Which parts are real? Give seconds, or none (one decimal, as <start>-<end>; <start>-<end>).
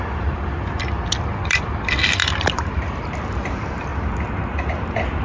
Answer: 3.9-5.2